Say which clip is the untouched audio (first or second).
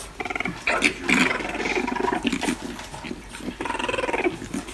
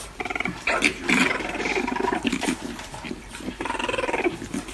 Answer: first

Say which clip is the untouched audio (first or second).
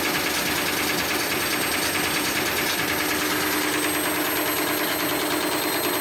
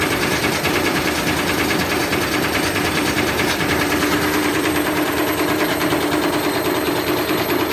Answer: first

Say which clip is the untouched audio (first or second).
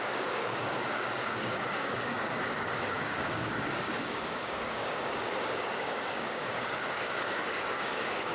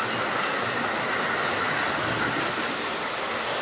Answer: second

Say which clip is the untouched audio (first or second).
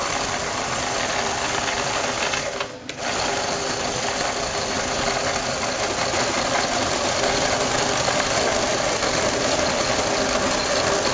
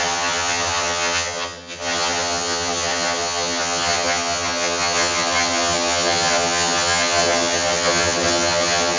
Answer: first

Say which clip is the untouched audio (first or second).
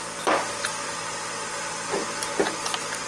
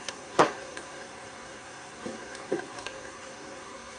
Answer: first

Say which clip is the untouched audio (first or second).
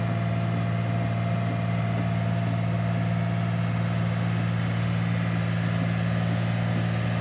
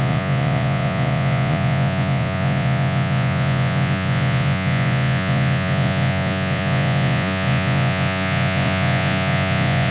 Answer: first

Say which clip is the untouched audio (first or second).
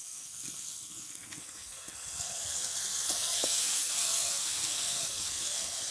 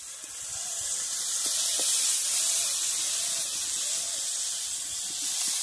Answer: second